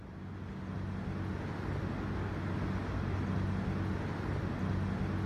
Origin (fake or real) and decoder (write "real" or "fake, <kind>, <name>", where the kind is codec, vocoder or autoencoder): real